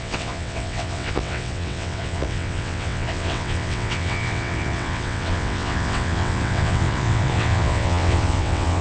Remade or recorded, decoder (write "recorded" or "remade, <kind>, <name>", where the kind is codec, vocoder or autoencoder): remade, vocoder, WaveNeXt